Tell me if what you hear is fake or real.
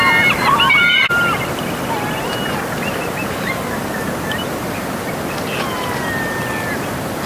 real